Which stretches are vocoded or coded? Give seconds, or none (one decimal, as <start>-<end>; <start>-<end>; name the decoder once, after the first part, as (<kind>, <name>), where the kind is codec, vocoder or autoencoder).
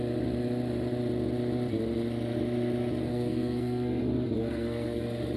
3.1-4.0 (codec, SNAC); 4.4-5.0